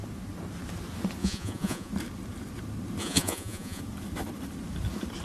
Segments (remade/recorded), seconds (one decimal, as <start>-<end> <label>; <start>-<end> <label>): 0.0-1.2 recorded; 1.2-1.9 remade; 1.9-3.0 recorded; 3.0-3.8 remade; 3.8-5.2 recorded